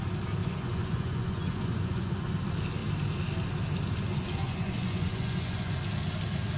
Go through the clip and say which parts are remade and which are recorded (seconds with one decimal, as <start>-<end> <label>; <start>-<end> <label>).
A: 0.0-0.4 recorded; 0.4-2.3 remade; 2.3-4.4 recorded; 4.4-5.8 remade; 5.8-6.6 recorded